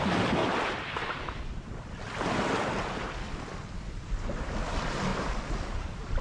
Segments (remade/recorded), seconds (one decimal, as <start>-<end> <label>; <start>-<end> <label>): 0.0-6.2 recorded